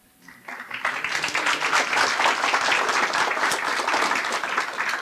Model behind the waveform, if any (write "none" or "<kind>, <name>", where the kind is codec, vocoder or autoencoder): none